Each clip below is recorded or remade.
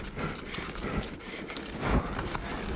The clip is recorded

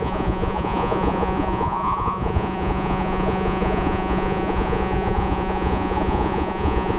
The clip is remade